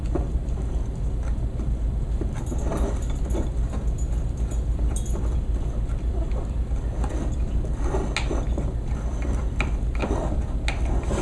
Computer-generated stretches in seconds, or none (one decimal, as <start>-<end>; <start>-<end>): none